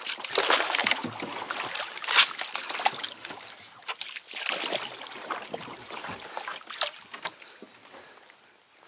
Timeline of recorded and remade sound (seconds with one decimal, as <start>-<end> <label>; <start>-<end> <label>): 0.0-8.9 recorded

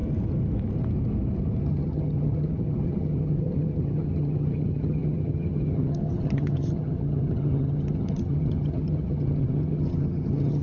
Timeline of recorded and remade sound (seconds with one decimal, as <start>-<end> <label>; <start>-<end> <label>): 0.0-1.6 recorded; 1.6-10.6 remade

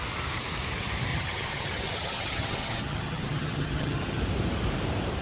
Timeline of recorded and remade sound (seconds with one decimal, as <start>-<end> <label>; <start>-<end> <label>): 0.0-1.1 recorded; 1.1-4.2 remade; 4.2-5.2 recorded